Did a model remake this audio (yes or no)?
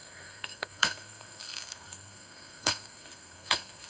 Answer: yes